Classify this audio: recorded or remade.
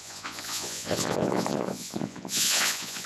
remade